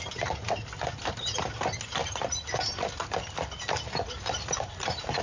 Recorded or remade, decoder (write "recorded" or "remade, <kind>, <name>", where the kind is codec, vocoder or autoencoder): recorded